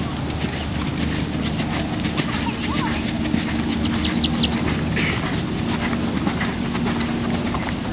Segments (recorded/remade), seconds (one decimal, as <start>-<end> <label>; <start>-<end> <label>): 0.0-7.9 recorded

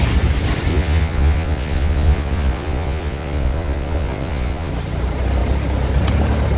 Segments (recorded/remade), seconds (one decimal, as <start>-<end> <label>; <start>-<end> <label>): 0.0-0.7 recorded; 0.7-4.7 remade; 4.7-6.6 recorded

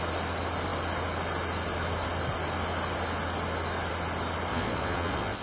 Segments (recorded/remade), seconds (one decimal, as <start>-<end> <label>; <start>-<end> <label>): 0.0-4.5 recorded; 4.5-5.4 remade

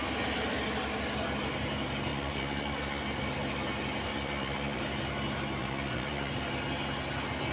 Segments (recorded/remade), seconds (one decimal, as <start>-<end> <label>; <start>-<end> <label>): 0.0-2.1 recorded; 2.1-3.0 remade; 3.0-4.1 recorded; 4.1-4.8 remade; 4.8-5.6 recorded; 5.6-6.3 remade; 6.3-7.5 recorded

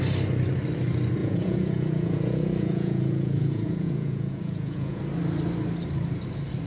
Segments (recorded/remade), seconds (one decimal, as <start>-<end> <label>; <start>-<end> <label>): 0.0-1.2 recorded; 1.2-5.0 remade; 5.0-6.7 recorded

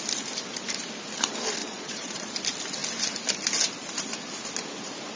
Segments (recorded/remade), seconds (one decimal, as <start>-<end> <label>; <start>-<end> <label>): 0.0-1.6 recorded; 1.6-2.3 remade; 2.3-5.2 recorded

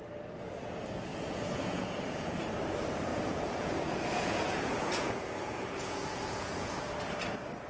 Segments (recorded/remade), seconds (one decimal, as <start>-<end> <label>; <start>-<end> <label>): 0.0-1.1 recorded; 1.1-2.4 remade; 2.4-3.1 recorded; 3.1-6.8 remade; 6.8-7.7 recorded